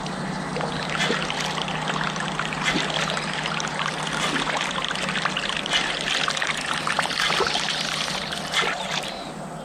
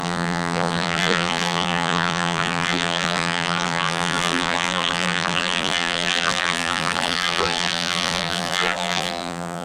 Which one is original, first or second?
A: first